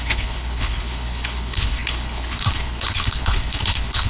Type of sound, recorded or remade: remade